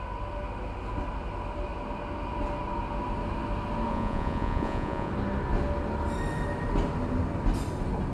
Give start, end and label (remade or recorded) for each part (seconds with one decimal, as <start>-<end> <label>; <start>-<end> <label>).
0.0-3.9 recorded; 3.9-5.1 remade; 5.1-8.1 recorded

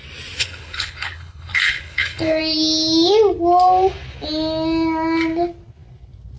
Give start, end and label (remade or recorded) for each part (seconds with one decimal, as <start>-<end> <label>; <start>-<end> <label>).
0.0-0.4 recorded; 0.4-2.4 remade; 2.4-6.4 recorded

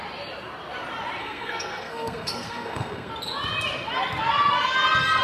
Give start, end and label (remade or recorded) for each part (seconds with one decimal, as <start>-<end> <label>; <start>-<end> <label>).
0.0-1.2 recorded; 1.2-3.1 remade; 3.1-5.2 recorded

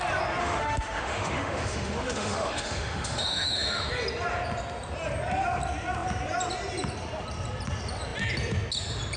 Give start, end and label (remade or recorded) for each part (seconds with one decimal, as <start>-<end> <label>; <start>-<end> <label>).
0.0-0.4 recorded; 0.4-3.9 remade; 3.9-9.2 recorded